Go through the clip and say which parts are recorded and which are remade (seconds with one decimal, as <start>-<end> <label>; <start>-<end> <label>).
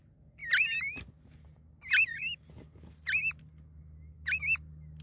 0.0-5.0 recorded